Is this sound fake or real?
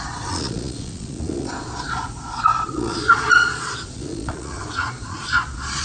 fake